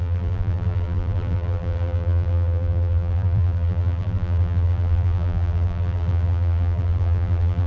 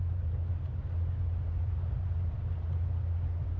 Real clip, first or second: second